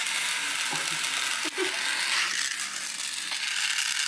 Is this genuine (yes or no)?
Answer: yes